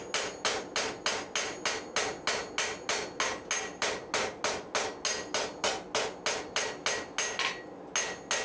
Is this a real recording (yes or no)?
yes